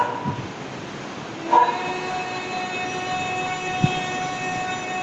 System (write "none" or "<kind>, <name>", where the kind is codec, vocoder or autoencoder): none